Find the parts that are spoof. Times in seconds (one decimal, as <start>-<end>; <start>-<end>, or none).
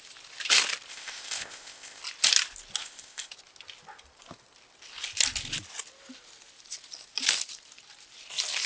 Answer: 0.9-2.0; 2.8-3.3